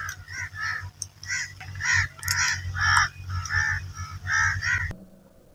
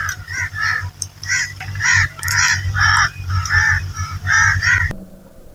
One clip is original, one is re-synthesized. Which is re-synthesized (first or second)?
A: second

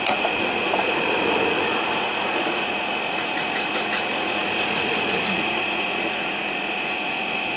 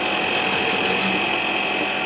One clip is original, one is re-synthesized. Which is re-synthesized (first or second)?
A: first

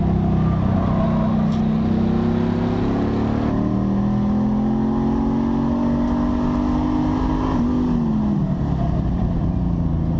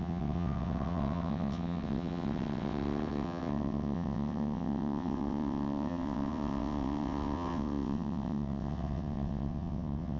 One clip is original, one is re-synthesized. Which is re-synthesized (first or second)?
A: second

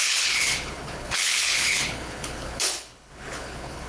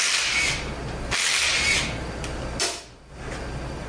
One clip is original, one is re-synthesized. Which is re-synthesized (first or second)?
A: first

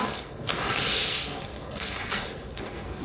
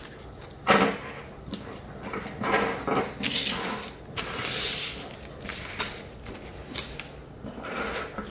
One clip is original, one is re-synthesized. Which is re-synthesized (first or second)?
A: first